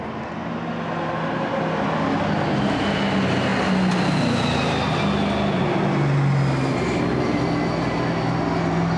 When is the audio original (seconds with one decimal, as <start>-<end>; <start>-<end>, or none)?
0.0-9.0